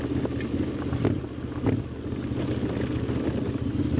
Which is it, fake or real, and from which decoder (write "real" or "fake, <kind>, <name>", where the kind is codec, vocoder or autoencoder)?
real